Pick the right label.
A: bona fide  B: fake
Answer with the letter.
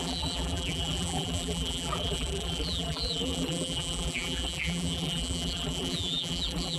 B